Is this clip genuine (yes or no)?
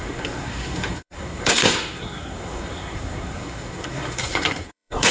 no